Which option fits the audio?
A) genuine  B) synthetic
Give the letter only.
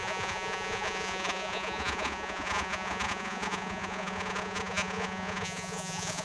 B